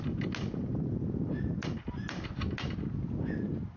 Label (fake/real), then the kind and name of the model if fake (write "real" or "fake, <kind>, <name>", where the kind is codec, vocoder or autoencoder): real